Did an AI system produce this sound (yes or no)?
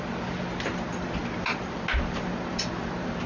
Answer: no